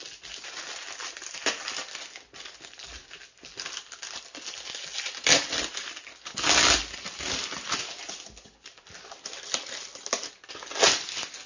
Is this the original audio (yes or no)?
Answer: yes